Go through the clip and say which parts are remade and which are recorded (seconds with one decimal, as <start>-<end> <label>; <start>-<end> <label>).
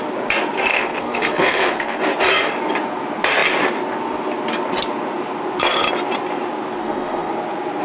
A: 0.0-0.7 recorded; 0.7-2.0 remade; 2.0-6.8 recorded; 6.8-7.3 remade; 7.3-7.8 recorded